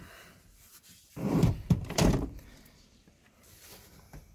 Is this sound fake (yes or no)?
yes